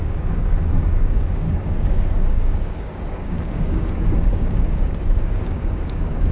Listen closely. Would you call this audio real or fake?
fake